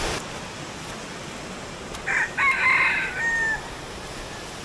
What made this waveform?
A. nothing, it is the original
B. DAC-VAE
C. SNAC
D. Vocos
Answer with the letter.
A